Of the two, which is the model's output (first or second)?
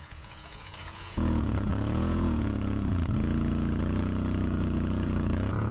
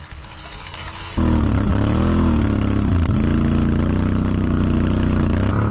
first